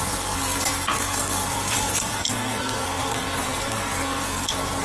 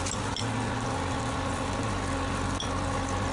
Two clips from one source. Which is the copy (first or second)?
first